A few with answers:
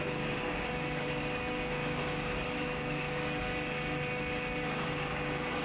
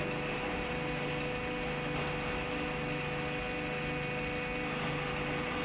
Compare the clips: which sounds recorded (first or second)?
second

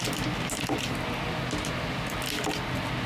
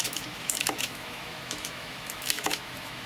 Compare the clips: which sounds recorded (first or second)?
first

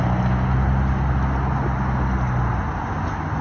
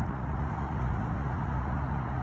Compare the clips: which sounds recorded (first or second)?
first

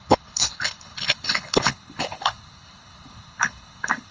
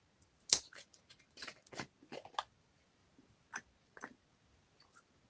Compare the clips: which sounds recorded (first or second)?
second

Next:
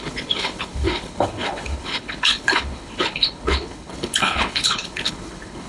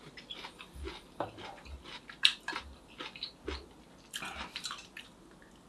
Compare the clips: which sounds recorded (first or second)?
second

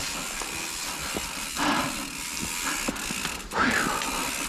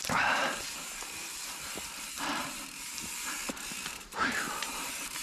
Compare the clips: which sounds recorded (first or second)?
first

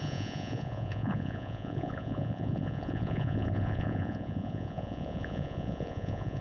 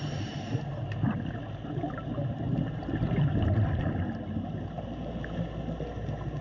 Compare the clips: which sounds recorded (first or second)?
second